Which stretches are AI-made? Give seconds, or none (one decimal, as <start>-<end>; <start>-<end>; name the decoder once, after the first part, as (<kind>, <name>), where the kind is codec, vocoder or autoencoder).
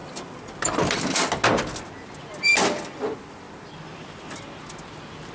none